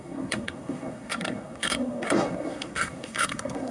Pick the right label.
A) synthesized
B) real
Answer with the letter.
A